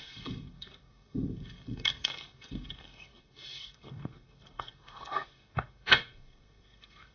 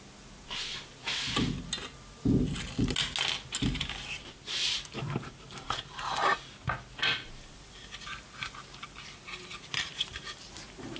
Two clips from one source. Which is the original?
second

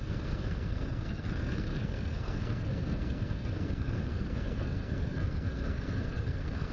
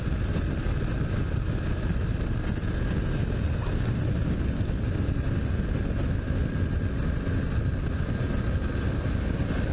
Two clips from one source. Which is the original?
second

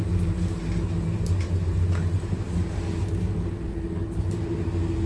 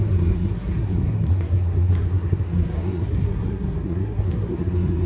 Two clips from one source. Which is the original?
first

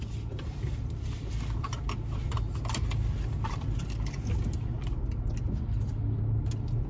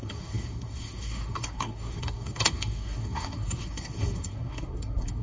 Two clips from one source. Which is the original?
first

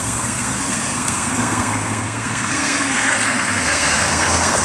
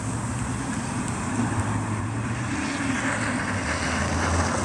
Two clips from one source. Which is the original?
second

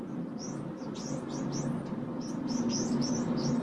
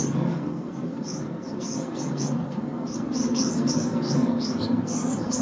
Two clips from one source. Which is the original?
first